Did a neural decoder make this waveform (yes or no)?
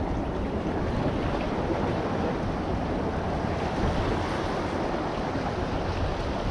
no